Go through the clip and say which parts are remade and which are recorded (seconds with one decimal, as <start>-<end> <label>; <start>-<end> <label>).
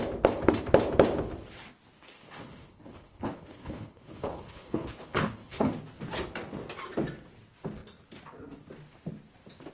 0.0-2.0 recorded; 2.0-5.7 remade; 5.7-9.7 recorded